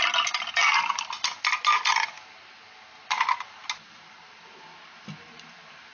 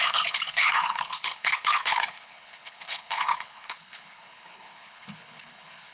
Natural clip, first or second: first